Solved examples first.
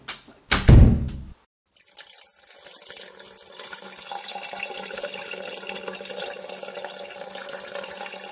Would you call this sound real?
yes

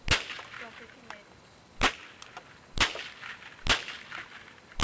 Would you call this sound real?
yes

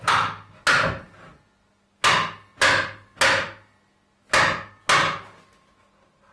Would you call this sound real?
yes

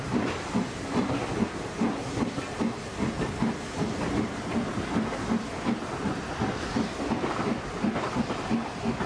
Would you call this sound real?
yes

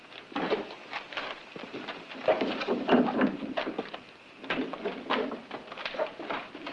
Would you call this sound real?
no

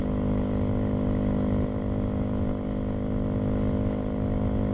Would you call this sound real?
yes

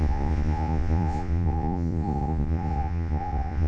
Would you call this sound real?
no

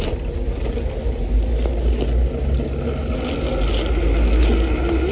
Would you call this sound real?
yes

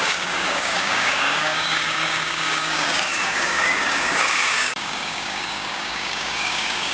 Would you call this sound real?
no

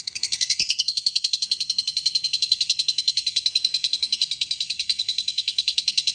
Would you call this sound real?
no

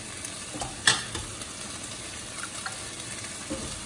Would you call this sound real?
yes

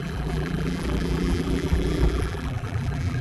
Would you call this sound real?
no